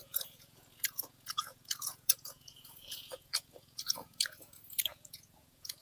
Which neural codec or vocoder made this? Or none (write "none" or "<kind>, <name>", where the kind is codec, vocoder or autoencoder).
vocoder, Vocos